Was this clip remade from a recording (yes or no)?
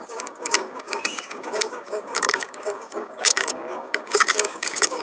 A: yes